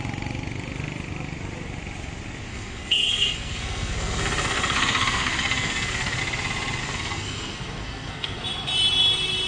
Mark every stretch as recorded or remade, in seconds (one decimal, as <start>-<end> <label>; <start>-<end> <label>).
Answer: 0.0-2.5 recorded; 2.5-6.2 remade; 6.2-6.8 recorded; 6.8-8.4 remade; 8.4-9.5 recorded

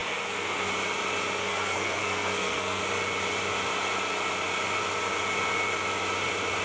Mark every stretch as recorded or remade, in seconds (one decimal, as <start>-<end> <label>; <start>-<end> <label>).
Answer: 0.0-0.7 remade; 0.7-1.4 recorded; 1.4-2.8 remade; 2.8-6.6 recorded

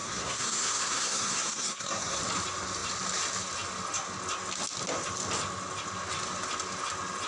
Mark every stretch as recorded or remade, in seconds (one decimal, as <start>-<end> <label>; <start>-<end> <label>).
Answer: 0.0-2.2 remade; 2.2-7.3 recorded